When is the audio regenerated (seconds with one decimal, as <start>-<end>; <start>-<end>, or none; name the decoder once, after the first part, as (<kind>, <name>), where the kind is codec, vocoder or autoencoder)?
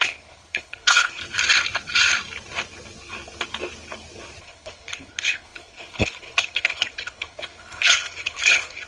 0.0-1.2 (codec, HILCodec); 4.4-8.9